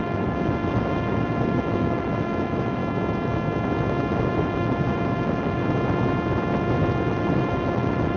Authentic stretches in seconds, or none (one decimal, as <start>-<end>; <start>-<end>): 2.8-4.1; 5.6-7.1